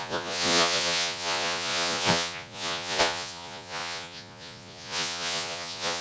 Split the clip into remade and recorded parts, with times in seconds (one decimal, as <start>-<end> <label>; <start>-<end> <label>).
0.0-6.0 remade